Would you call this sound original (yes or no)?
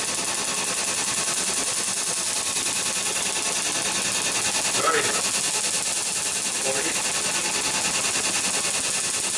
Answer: yes